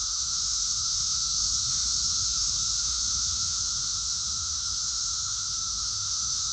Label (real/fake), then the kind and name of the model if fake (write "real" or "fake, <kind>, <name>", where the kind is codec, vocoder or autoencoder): fake, autoencoder, DAC-VAE